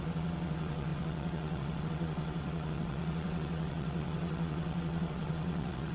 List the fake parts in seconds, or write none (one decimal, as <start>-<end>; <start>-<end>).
0.0-5.9